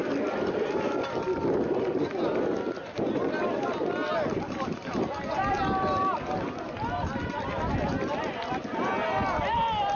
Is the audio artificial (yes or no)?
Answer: no